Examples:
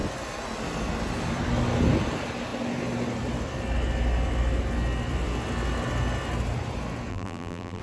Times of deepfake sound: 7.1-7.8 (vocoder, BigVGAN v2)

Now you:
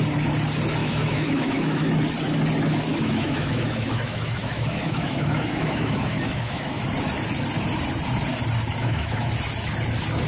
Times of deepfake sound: 0.8-1.9 (autoencoder, DAC-VAE); 2.9-6.8; 8.8-9.3

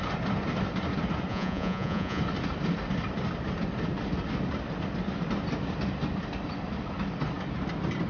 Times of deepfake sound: 1.3-2.2 (vocoder, Vocos)

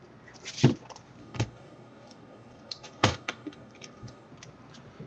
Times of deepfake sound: 1.2-4.3 (codec, DAC)

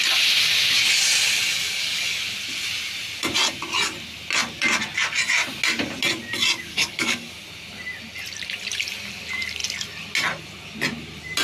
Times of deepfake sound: 1.5-2.2 (codec, DAC); 6.7-7.3

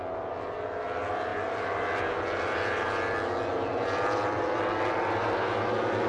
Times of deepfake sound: none